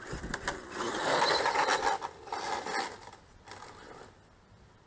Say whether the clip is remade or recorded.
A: recorded